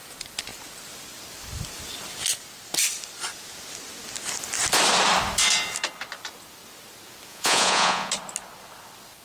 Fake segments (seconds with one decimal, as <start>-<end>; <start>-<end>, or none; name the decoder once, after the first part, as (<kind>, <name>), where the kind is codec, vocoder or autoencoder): 7.3-8.1 (vocoder, Vocos)